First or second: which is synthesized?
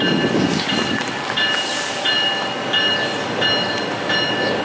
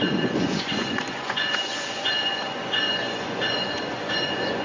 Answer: second